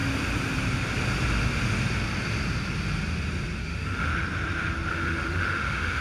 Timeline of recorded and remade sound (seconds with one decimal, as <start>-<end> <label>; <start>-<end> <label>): 0.0-3.6 recorded; 3.6-4.1 remade; 4.1-4.9 recorded; 4.9-6.0 remade